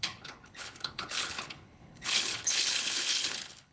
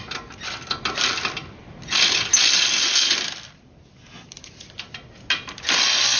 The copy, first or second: first